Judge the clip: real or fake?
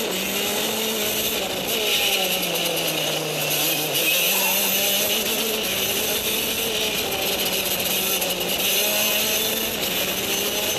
real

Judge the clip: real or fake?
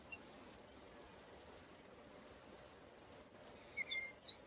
real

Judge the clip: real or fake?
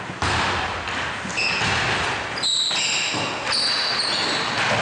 real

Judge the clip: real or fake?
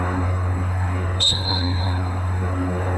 fake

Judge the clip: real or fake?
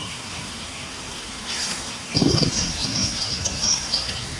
fake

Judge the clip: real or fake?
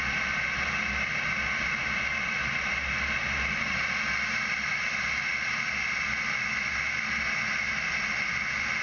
real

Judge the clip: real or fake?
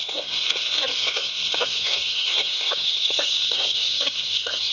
fake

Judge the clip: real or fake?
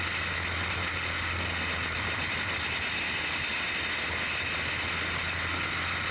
real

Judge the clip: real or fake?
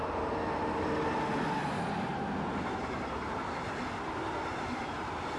real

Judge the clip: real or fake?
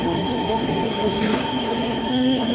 fake